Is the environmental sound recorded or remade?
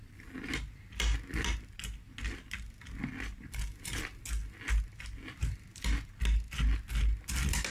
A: recorded